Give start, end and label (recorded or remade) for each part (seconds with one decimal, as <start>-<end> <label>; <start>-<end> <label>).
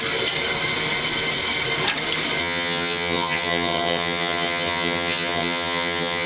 0.0-2.4 recorded; 2.4-6.3 remade